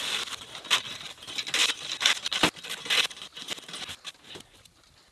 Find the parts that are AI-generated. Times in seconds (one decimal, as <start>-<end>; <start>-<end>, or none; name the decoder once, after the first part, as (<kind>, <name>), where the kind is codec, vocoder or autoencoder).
none

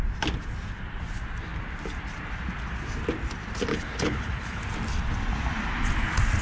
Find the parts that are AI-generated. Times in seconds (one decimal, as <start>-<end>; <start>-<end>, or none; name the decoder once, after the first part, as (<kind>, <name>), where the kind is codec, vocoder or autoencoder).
3.7-4.6 (codec, HILCodec)

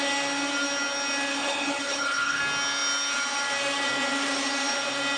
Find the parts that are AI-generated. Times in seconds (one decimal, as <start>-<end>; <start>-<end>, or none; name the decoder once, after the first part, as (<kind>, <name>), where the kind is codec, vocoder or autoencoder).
1.3-2.4 (codec, HILCodec)

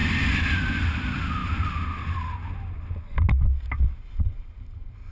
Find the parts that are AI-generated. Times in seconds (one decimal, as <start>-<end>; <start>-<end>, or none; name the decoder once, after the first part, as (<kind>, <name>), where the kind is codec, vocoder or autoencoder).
none

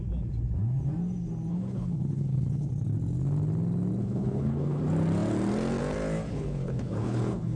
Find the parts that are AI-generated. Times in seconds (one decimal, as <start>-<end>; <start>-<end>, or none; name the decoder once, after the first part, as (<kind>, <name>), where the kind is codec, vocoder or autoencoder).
1.5-2.7 (codec, HILCodec); 4.0-4.8; 6.3-7.6

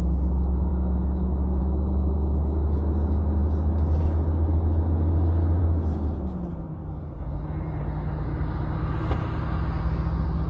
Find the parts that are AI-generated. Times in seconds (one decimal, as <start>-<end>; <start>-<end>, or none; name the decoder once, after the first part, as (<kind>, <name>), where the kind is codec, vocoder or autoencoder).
none

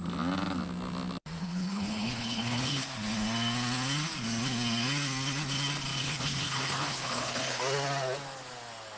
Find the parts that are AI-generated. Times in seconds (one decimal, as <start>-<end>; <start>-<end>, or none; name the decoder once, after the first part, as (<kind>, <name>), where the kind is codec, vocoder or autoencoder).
1.4-2.9 (codec, HILCodec); 6.0-7.6

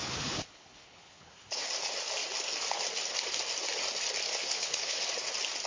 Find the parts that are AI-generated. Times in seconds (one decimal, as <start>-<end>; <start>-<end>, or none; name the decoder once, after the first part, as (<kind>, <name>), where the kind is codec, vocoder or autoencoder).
0.0-1.7 (codec, HILCodec); 4.4-5.0